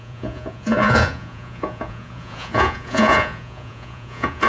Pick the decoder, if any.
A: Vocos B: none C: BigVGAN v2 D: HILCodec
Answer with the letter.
A